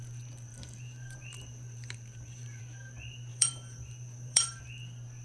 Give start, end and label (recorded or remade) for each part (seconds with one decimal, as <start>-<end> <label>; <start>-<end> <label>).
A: 0.0-0.5 recorded; 0.5-2.6 remade; 2.6-3.3 recorded; 3.3-4.6 remade; 4.6-5.2 recorded